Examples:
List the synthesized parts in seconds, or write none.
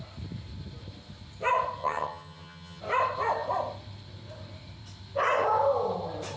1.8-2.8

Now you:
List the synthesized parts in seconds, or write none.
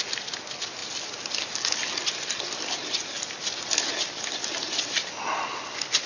none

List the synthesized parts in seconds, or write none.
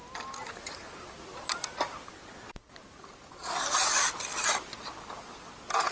none